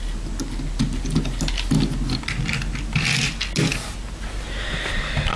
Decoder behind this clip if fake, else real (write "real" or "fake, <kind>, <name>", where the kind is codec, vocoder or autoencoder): real